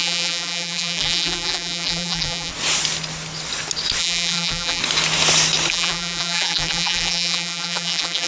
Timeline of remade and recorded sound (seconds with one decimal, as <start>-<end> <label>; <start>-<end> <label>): 0.0-2.5 remade; 2.5-4.0 recorded; 4.0-4.8 remade; 4.8-5.7 recorded; 5.7-8.3 remade

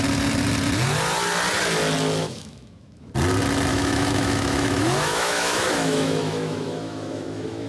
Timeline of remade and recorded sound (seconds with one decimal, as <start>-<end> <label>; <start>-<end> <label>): 0.0-2.2 recorded; 2.2-3.1 remade; 3.1-3.7 recorded; 3.7-7.7 remade

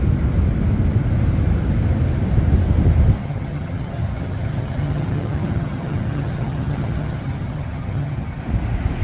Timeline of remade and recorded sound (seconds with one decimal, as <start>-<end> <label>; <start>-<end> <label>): 0.0-3.2 recorded; 3.2-8.4 remade; 8.4-9.0 recorded

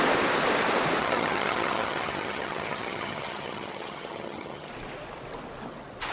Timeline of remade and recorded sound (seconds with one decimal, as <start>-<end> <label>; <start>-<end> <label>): 0.0-1.0 recorded; 1.0-4.7 remade; 4.7-6.1 recorded